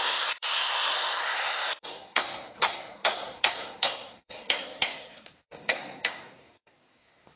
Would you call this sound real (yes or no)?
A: no